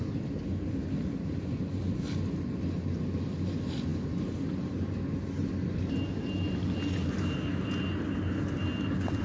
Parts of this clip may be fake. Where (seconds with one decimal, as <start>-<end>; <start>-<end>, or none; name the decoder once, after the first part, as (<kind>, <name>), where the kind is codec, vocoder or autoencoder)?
none